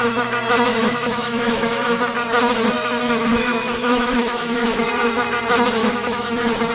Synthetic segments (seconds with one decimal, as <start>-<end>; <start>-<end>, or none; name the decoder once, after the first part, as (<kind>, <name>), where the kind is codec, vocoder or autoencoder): 0.7-2.0 (autoencoder, DAC-VAE); 3.3-4.9; 5.8-6.3